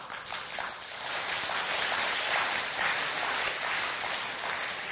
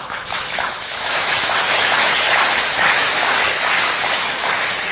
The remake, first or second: second